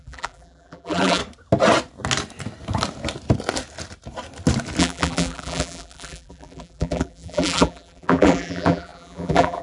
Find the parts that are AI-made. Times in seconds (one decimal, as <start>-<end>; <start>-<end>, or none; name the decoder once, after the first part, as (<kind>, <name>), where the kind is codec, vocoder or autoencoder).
0.0-1.2 (vocoder, BigVGAN v2); 4.8-9.6

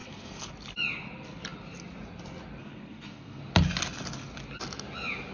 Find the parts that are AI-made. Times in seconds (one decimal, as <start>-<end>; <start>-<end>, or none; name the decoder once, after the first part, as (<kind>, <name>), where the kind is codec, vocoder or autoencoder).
0.0-0.5 (codec, SNAC); 2.6-3.4

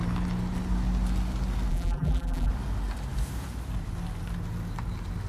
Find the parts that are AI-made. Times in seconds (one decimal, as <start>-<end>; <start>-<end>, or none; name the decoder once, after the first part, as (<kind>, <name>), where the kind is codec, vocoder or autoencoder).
1.7-2.5 (vocoder, BigVGAN v2)

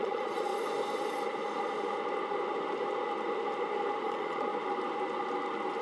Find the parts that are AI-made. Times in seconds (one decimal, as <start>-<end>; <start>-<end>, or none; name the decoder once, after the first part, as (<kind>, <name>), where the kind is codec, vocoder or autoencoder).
0.0-0.5 (vocoder, Vocos); 4.0-4.5

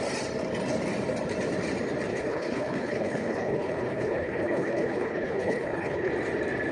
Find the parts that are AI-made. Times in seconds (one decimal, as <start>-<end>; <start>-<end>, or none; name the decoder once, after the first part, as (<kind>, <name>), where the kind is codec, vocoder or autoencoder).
2.1-6.1 (codec, HILCodec)